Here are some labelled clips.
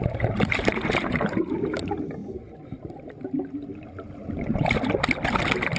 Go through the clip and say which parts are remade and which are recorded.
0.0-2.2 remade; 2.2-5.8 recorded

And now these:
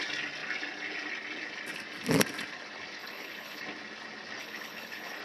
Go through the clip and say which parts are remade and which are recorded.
0.0-3.0 recorded; 3.0-3.6 remade; 3.6-4.4 recorded; 4.4-5.2 remade

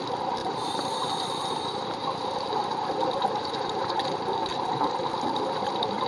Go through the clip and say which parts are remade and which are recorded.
0.0-0.4 recorded; 0.4-4.1 remade; 4.1-4.5 recorded; 4.5-5.6 remade; 5.6-6.1 recorded

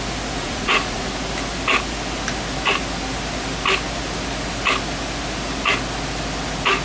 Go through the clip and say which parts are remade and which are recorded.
0.0-0.4 recorded; 0.4-1.1 remade; 1.1-6.8 recorded

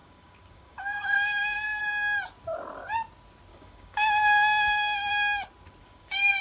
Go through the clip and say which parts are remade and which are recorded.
0.0-1.8 remade; 1.8-3.5 recorded; 3.5-5.1 remade; 5.1-5.8 recorded; 5.8-6.4 remade